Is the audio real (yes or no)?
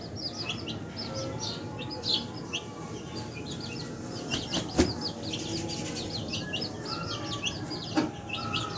yes